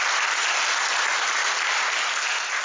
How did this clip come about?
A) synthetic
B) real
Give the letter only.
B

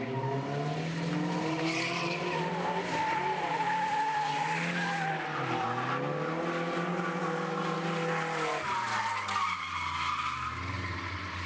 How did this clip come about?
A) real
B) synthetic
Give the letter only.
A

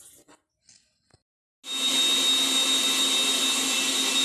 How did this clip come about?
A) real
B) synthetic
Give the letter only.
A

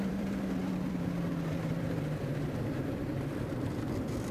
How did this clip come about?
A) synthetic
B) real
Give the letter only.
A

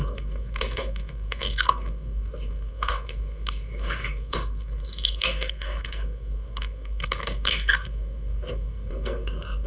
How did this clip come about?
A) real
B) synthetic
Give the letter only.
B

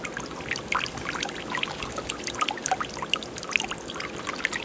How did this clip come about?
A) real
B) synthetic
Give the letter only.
A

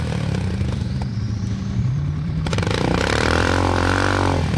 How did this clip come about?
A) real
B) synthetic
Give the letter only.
B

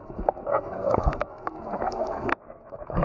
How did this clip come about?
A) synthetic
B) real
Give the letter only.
A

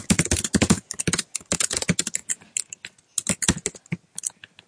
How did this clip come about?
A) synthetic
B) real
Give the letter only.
B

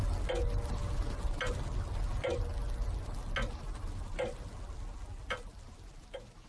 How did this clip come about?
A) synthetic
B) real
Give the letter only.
B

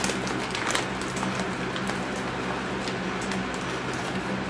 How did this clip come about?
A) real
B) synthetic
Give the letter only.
A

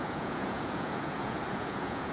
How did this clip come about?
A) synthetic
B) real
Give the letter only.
A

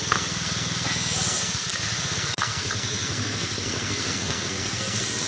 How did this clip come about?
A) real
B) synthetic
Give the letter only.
B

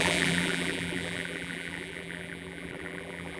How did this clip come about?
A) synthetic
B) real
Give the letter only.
A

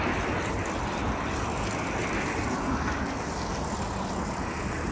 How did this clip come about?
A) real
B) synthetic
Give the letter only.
A